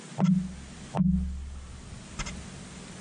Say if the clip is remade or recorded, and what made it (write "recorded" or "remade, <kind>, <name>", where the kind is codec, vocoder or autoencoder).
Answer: recorded